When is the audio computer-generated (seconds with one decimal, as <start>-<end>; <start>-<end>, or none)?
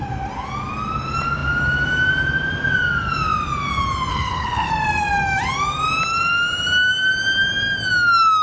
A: 4.1-4.7